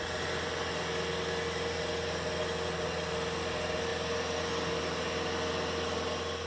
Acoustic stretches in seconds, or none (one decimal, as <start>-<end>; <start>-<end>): 0.0-6.5